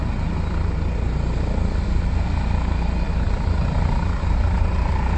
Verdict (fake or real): real